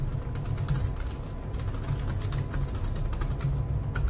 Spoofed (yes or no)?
no